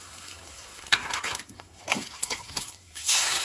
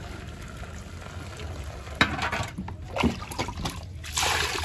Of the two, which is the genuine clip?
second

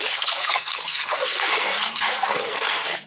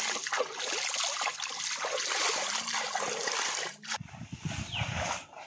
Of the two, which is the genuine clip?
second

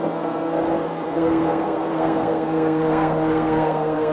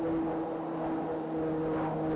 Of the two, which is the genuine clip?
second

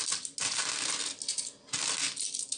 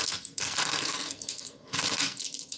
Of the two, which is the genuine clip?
first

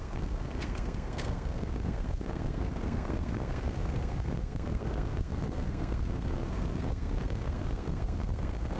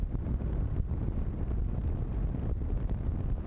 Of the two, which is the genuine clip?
second